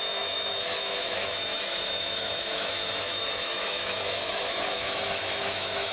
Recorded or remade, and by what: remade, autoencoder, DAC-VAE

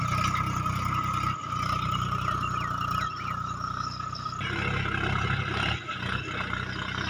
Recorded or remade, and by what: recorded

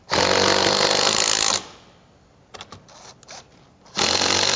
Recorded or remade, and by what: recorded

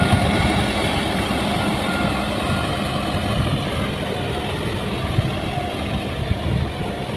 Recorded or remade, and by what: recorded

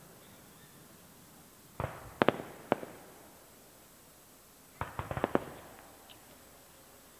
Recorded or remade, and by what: recorded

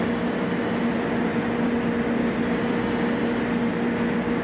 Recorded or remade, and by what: recorded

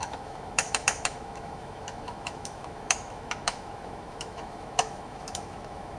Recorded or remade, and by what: remade, autoencoder, DAC-VAE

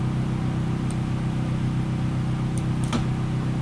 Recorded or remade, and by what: recorded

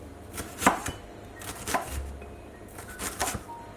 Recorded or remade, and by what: recorded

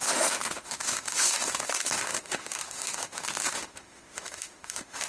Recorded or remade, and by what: remade, autoencoder, DAC-VAE